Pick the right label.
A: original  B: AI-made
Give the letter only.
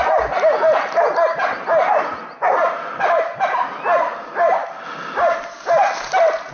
A